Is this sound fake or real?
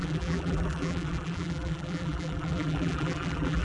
fake